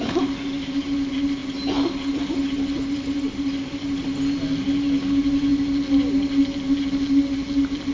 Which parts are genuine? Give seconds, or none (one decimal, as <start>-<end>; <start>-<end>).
0.0-7.9